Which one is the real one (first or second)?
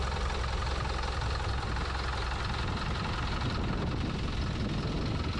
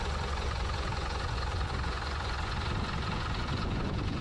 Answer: first